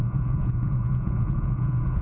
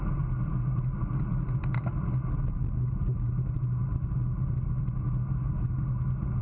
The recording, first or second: second